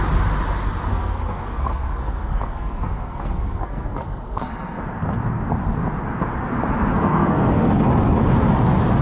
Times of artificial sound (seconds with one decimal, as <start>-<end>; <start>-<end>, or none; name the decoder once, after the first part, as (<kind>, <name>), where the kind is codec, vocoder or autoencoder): 0.9-4.8 (codec, SNAC); 6.9-7.9